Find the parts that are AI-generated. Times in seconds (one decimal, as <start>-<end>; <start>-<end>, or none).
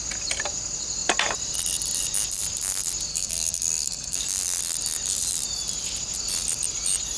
3.1-4.2